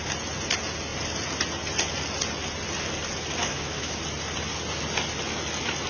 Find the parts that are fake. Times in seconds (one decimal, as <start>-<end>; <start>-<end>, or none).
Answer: 3.4-4.0